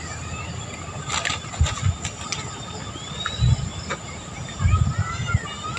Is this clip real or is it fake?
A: real